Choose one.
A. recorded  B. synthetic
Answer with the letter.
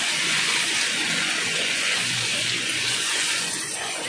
B